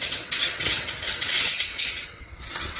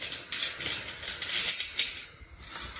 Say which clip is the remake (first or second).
first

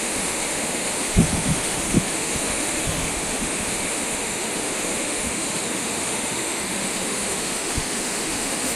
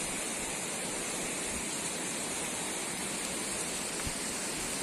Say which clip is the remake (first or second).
first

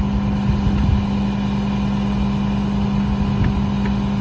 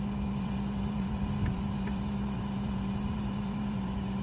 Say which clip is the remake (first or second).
second